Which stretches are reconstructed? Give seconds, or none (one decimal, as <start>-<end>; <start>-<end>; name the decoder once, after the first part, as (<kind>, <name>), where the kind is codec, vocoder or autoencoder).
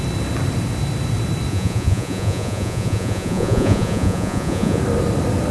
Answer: 1.5-4.8 (vocoder, Vocos)